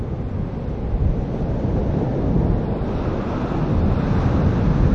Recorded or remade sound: recorded